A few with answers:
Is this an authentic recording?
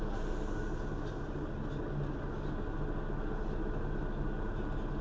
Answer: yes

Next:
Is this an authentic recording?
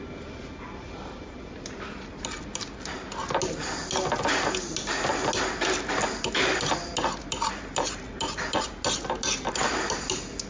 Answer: yes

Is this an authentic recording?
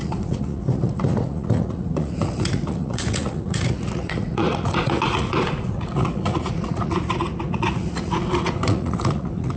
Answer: no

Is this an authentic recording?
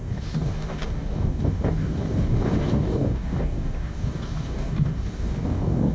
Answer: no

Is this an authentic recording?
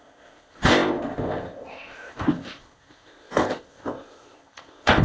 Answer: no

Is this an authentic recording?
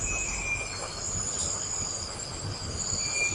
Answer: yes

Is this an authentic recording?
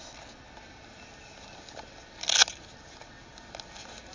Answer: yes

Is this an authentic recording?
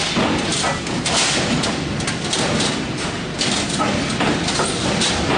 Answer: yes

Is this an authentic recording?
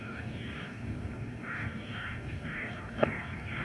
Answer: no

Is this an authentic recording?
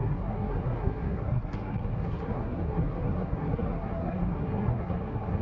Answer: no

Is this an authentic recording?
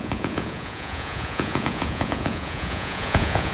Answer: no